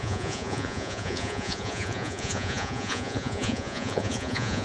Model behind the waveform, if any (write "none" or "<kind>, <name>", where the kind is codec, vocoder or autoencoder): vocoder, Vocos